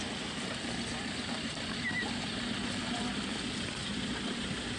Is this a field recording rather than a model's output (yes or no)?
no